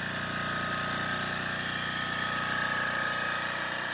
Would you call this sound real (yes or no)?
yes